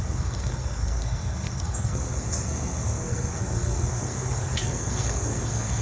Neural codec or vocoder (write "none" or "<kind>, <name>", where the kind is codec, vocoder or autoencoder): codec, SNAC